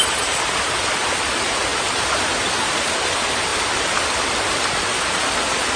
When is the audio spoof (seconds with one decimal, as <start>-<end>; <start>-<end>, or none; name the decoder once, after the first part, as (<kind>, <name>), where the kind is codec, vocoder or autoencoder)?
none